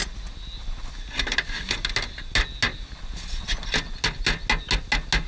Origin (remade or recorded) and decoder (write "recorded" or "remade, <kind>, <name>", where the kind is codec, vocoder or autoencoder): recorded